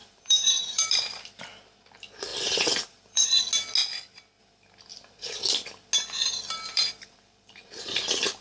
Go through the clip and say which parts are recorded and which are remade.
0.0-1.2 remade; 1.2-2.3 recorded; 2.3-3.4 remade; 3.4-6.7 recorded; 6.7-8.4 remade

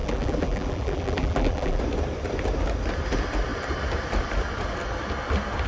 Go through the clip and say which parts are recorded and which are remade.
0.0-1.8 remade; 1.8-5.7 recorded